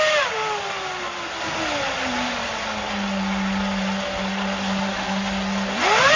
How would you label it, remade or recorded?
recorded